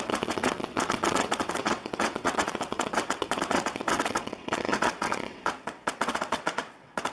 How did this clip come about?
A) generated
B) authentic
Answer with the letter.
A